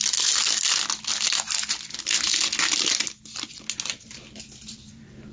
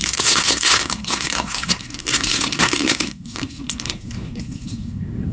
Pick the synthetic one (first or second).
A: second